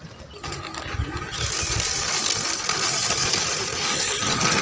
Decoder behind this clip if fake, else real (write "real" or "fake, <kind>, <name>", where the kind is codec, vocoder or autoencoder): real